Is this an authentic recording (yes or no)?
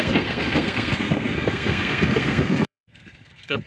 no